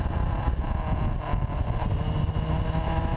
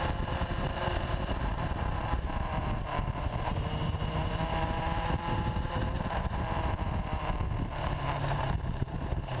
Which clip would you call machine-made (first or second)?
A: second